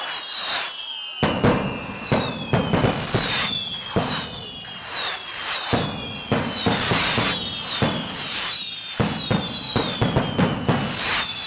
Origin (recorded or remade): recorded